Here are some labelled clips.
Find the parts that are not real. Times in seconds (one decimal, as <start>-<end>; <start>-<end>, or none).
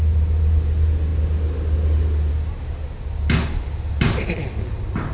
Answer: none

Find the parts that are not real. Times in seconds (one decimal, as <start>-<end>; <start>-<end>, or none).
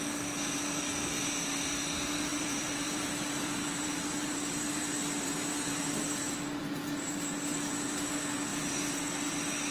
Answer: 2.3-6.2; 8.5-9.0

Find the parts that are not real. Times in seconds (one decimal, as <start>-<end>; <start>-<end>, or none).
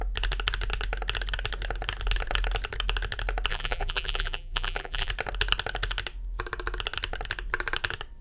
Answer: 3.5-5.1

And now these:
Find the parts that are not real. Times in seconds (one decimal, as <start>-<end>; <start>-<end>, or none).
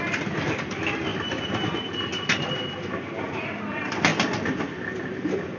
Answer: none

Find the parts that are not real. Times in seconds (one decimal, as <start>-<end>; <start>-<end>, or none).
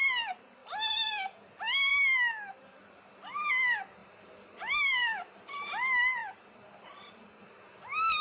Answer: 0.6-1.5; 4.0-5.6; 6.2-7.4